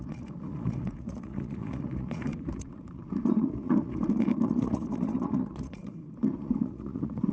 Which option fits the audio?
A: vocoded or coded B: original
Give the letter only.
A